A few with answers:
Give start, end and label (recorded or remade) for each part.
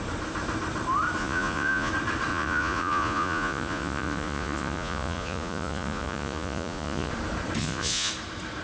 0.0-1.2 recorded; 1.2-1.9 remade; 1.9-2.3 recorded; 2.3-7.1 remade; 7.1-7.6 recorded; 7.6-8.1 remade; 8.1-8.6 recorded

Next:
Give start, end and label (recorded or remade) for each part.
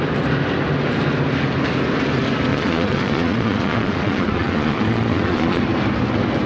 0.0-2.5 recorded; 2.5-5.6 remade; 5.6-6.5 recorded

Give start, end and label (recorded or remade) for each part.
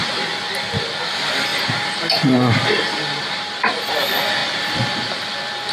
0.0-1.5 recorded; 1.5-4.0 remade; 4.0-4.4 recorded; 4.4-5.2 remade; 5.2-5.7 recorded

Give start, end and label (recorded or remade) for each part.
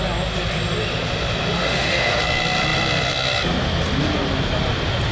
0.0-1.6 recorded; 1.6-2.2 remade; 2.2-5.1 recorded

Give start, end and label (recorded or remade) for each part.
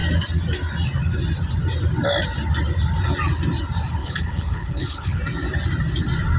0.0-4.0 recorded; 4.0-5.2 remade; 5.2-6.4 recorded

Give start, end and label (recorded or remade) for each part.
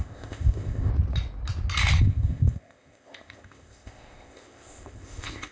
0.0-0.9 remade; 0.9-2.0 recorded; 2.0-5.5 remade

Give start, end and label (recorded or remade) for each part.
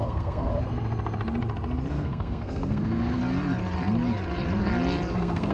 0.0-0.5 remade; 0.5-1.9 recorded; 1.9-3.2 remade; 3.2-5.1 recorded; 5.1-5.5 remade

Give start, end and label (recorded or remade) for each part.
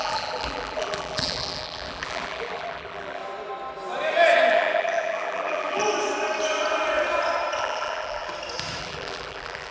0.0-3.2 remade; 3.2-4.5 recorded; 4.5-5.8 remade; 5.8-7.6 recorded; 7.6-8.3 remade; 8.3-8.8 recorded; 8.8-9.7 remade